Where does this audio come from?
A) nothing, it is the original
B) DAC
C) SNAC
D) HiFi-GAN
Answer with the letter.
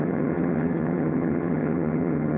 D